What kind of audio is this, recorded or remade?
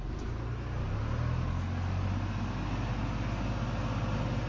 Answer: recorded